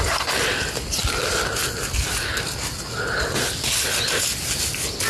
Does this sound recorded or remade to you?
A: recorded